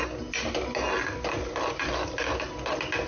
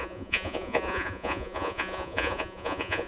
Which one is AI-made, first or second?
second